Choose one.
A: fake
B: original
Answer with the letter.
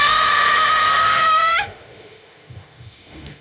A